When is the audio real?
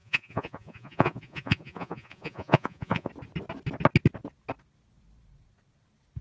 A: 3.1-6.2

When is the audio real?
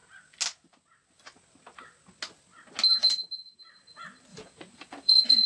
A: 0.0-4.3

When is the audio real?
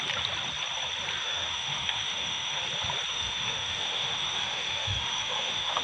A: 0.0-1.2; 2.6-3.1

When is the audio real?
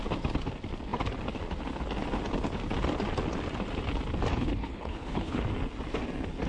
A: 0.0-4.3; 5.4-6.5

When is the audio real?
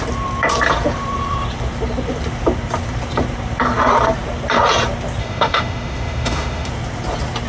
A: 0.0-5.2; 6.7-7.5